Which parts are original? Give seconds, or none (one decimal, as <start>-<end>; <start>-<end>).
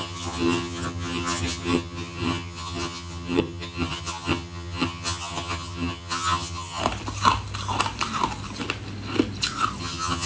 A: 6.8-9.8